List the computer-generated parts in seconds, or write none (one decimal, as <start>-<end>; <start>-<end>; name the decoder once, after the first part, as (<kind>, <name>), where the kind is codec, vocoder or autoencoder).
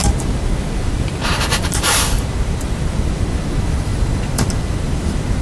0.0-2.3 (vocoder, BigVGAN v2)